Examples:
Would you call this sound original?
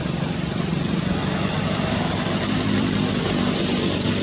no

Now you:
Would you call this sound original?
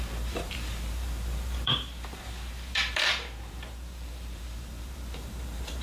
no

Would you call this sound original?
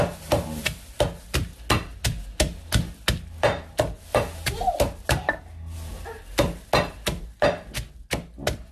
yes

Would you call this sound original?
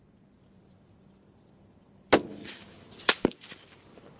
no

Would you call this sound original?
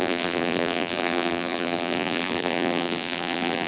no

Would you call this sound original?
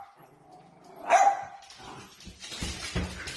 yes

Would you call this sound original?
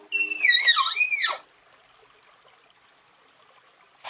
yes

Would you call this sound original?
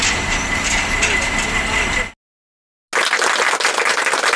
yes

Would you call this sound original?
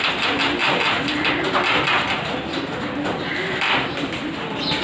yes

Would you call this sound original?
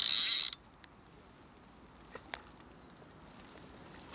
yes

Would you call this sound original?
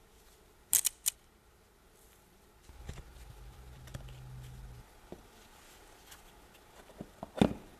yes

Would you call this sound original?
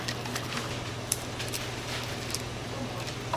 yes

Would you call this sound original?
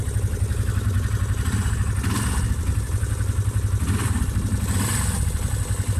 yes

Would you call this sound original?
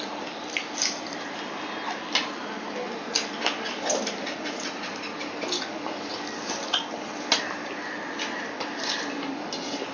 yes